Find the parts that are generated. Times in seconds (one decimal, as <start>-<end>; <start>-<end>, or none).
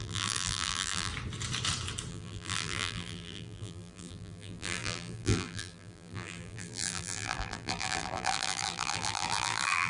0.0-1.1; 2.1-9.9